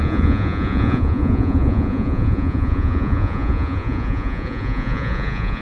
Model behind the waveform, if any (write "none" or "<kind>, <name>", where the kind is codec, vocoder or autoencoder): vocoder, Vocos